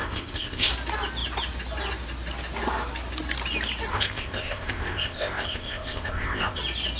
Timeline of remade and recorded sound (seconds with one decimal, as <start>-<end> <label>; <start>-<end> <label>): 0.0-0.7 remade; 0.7-3.9 recorded; 3.9-6.6 remade; 6.6-7.0 recorded